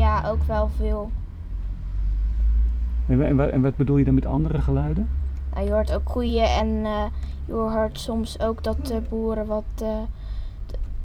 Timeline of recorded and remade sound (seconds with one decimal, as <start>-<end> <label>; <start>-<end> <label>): 0.0-4.3 recorded; 4.3-5.2 remade; 5.2-5.9 recorded; 5.9-6.6 remade; 6.6-11.0 recorded

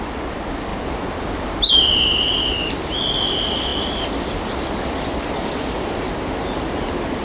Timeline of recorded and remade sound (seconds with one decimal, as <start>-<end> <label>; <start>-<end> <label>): 0.0-7.2 recorded

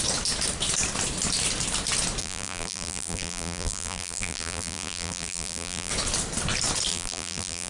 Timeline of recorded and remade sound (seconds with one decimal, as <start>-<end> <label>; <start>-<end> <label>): 0.0-2.2 recorded; 2.2-5.9 remade; 5.9-6.9 recorded; 6.9-7.7 remade